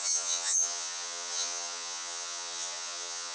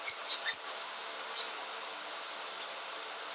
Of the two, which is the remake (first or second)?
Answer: first